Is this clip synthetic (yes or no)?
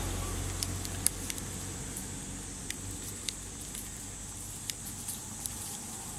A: no